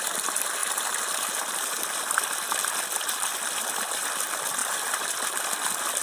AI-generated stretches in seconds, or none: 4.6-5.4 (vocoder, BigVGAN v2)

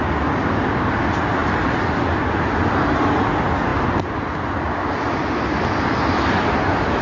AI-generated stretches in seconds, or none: 1.4-2.2 (vocoder, BigVGAN v2)

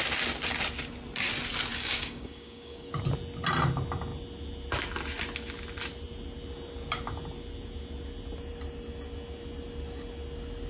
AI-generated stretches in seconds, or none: 1.7-3.0 (codec, DAC)

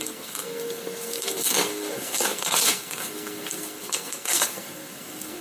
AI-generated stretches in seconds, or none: 0.0-5.4 (codec, SNAC)